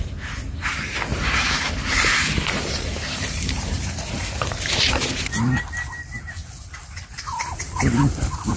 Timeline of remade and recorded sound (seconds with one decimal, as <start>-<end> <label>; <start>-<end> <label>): 0.0-1.1 recorded; 1.1-5.3 remade; 5.3-8.6 recorded